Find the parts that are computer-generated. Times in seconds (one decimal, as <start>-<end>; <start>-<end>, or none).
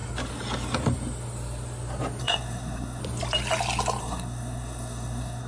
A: 2.2-3.0; 4.0-5.5